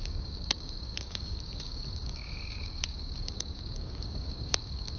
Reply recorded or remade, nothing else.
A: remade